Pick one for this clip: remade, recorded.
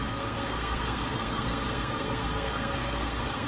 remade